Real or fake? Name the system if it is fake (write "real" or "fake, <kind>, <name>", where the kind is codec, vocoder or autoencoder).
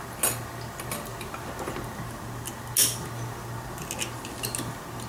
real